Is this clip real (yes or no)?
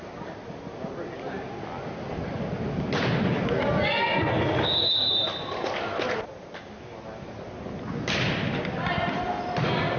yes